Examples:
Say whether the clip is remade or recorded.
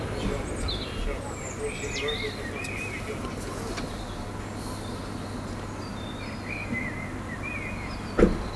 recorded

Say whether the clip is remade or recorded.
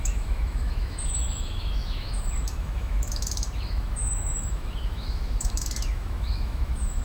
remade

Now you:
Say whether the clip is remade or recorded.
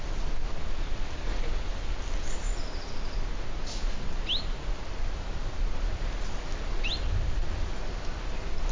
recorded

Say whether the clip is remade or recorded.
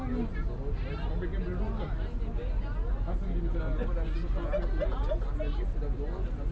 recorded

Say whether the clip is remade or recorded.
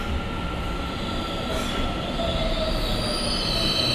recorded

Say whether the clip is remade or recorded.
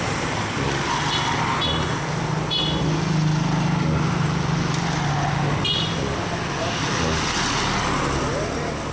recorded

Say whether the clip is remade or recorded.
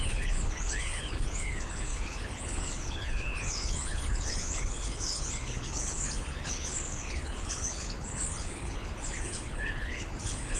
remade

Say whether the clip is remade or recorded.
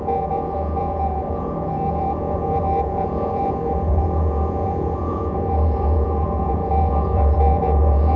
remade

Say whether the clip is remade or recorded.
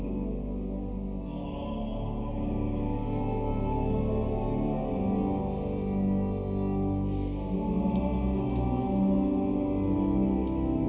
recorded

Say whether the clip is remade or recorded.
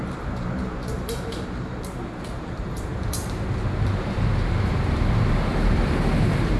remade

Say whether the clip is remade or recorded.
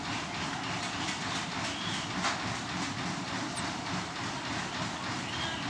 recorded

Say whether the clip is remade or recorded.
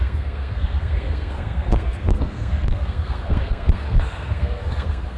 remade